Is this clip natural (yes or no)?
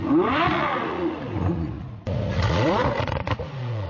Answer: no